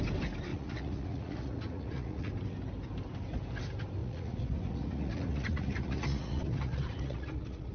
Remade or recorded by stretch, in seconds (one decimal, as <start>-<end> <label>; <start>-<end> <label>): 0.0-0.5 recorded; 0.5-2.3 remade; 2.3-4.0 recorded; 4.0-7.7 remade